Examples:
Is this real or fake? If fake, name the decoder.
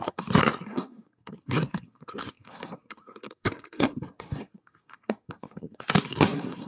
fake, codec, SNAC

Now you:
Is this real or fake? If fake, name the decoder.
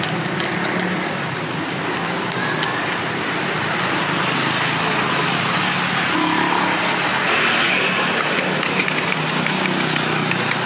real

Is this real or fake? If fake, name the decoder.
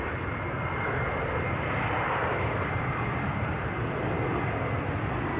real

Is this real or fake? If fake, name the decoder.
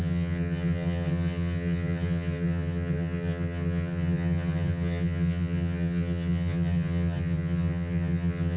fake, vocoder, HiFi-GAN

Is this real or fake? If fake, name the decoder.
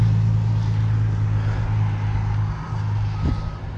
real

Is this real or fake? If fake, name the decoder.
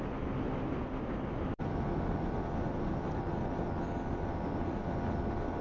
real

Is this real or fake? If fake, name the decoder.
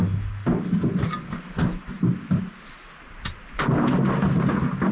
real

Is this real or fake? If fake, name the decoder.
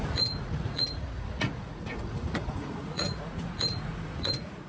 fake, vocoder, Vocos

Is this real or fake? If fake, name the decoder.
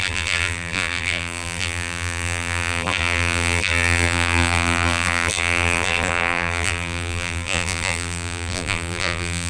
fake, vocoder, BigVGAN v2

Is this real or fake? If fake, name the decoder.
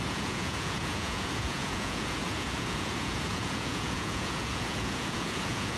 fake, vocoder, Vocos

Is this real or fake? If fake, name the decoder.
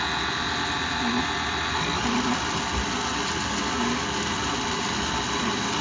real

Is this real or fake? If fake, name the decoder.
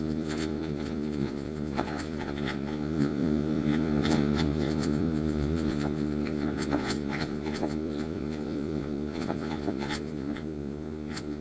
fake, vocoder, Vocos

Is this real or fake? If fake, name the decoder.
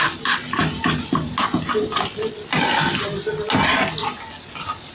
real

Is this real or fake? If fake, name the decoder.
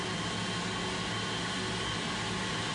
real